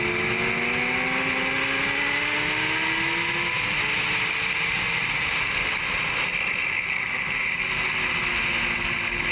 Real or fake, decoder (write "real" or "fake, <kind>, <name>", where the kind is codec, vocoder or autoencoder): real